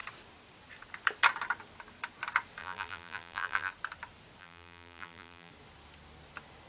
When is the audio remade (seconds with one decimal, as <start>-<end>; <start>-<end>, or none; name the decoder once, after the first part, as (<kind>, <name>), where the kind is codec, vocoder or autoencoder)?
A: 2.6-3.7 (vocoder, BigVGAN v2); 4.4-5.5